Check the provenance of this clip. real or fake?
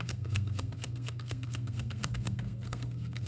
fake